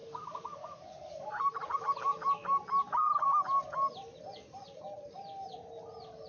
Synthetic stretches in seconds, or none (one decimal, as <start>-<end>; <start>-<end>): 0.0-1.3